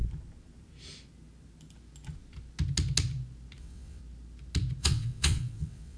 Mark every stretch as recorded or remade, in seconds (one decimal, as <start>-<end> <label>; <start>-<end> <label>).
0.0-3.6 recorded; 3.6-4.0 remade; 4.0-4.8 recorded; 4.8-6.0 remade

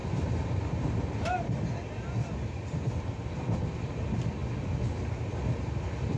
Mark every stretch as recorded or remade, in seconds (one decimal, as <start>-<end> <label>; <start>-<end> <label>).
0.0-6.2 recorded